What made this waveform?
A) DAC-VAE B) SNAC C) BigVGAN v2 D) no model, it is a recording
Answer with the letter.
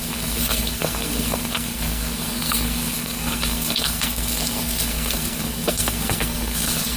B